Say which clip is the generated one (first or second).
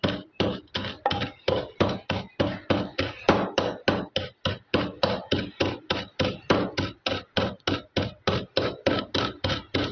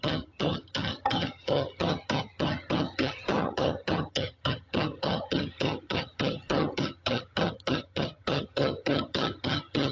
second